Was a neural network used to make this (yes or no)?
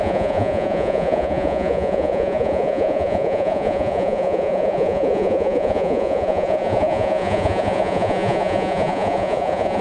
yes